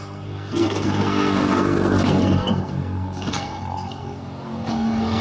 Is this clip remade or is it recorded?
remade